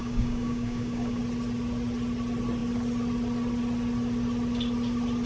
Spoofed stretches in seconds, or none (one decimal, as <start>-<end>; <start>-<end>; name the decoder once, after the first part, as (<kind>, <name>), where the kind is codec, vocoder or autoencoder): 0.0-1.2 (codec, DAC)